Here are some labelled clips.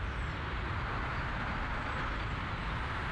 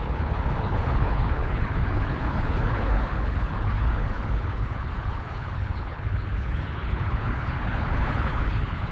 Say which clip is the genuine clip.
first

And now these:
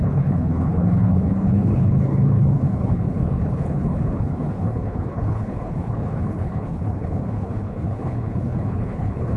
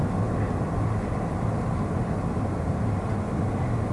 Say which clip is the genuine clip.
second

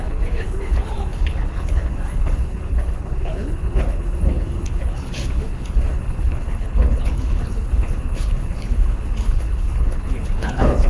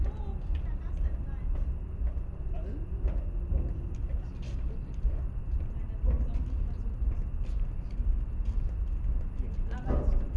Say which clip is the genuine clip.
second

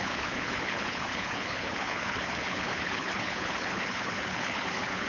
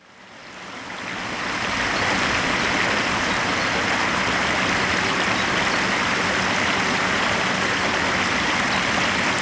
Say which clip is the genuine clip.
second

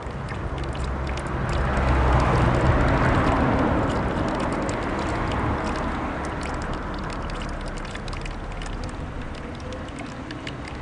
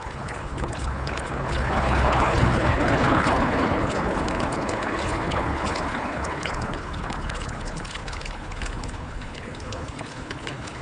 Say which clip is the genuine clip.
first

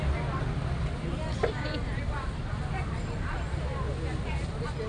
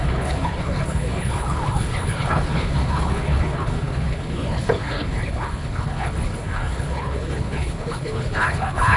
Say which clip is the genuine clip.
first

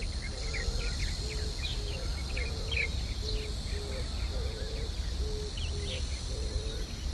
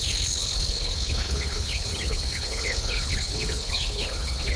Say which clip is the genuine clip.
first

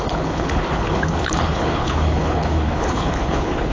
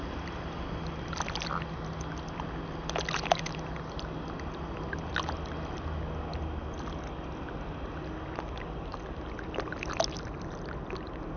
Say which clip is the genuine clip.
second